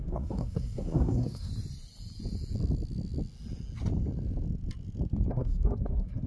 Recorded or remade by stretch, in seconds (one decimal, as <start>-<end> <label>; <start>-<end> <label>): 0.0-1.5 remade; 1.5-5.3 recorded; 5.3-6.3 remade

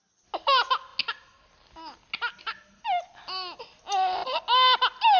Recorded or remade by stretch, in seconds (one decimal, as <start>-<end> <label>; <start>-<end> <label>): 0.0-5.2 recorded

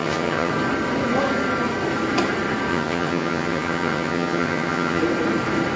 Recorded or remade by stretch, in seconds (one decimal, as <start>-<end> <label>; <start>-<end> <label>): 0.0-0.5 remade; 0.5-2.7 recorded; 2.7-5.0 remade; 5.0-5.8 recorded

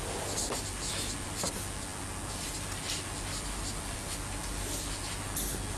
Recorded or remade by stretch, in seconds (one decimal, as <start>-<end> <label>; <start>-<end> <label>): 0.0-5.8 recorded

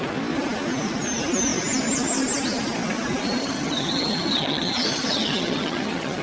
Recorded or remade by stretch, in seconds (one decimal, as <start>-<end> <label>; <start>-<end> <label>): 0.0-3.4 recorded; 3.4-6.2 remade